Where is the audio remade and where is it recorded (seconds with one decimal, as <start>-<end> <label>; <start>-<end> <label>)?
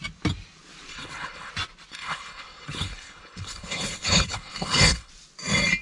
0.0-0.9 recorded; 0.9-1.5 remade; 1.5-1.9 recorded; 1.9-5.1 remade; 5.1-5.8 recorded